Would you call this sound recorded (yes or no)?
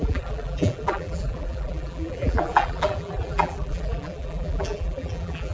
no